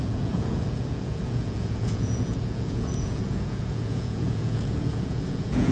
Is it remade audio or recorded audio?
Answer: remade